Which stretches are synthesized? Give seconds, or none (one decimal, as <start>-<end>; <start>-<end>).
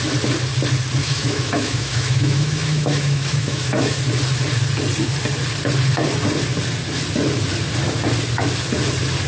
1.0-4.0